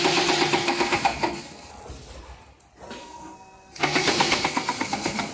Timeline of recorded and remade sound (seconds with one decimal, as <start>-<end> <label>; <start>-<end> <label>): 0.0-0.6 recorded; 0.6-1.7 remade; 1.7-3.0 recorded; 3.0-5.3 remade